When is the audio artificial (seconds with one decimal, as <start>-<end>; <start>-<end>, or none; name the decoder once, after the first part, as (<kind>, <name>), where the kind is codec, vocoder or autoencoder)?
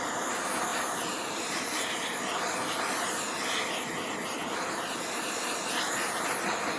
0.7-2.3 (vocoder, BigVGAN v2)